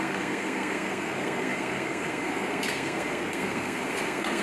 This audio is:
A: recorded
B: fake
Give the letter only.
B